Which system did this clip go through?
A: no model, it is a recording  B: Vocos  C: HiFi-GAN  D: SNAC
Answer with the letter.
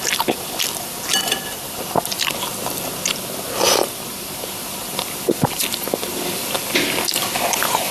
A